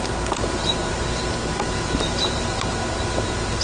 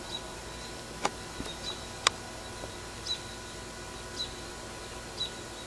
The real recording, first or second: second